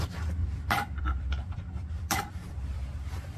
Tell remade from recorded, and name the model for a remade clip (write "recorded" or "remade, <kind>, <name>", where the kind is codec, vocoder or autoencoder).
remade, vocoder, BigVGAN v2